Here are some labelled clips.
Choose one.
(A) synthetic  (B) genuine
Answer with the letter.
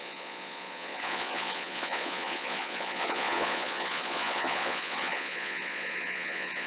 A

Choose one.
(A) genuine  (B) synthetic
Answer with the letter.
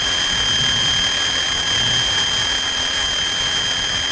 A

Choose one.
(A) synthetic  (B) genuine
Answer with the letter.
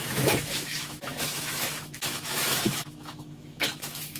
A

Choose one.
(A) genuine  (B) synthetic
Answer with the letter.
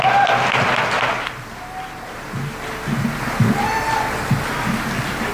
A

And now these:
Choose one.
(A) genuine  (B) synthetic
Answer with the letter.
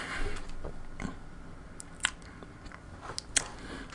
A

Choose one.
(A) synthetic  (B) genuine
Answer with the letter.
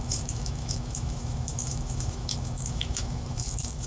A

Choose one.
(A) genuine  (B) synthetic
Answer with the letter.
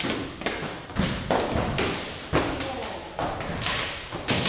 A